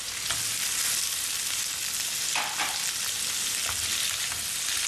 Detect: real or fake real